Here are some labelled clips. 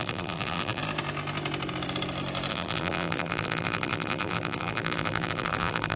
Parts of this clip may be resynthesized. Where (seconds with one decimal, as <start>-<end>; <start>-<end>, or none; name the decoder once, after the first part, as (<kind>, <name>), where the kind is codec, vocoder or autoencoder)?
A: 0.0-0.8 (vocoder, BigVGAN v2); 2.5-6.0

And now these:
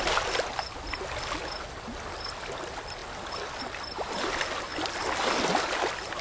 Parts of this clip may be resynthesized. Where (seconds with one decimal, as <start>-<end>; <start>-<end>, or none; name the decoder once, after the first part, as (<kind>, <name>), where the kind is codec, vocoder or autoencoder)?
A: none

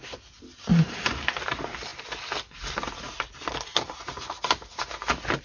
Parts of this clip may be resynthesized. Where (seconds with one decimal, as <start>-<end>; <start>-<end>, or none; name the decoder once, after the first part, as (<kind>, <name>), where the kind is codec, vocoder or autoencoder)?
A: none

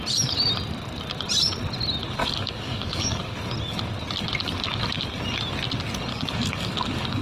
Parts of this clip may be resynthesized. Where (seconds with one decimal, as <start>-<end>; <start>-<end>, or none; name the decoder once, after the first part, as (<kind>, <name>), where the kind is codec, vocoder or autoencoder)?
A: 2.2-3.3 (codec, DAC); 6.1-7.2